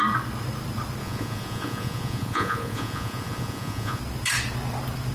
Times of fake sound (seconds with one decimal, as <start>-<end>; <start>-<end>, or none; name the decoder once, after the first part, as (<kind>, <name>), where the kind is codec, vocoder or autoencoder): 1.0-4.0 (vocoder, Vocos)